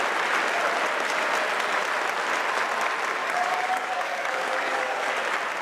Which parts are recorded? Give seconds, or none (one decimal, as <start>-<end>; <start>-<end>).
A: 0.0-3.2; 5.1-5.6